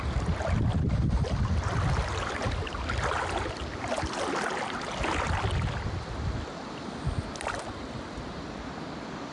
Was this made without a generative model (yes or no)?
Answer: yes